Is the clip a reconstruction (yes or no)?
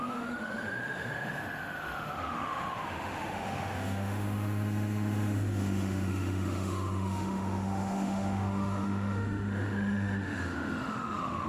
yes